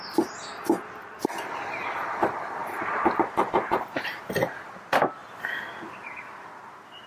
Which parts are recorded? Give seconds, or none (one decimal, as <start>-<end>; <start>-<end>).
0.0-1.0; 1.9-2.6; 4.3-7.1